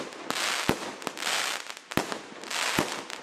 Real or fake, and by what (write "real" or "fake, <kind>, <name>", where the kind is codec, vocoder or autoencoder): real